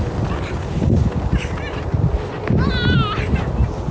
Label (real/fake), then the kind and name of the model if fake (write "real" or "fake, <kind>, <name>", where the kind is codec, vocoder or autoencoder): real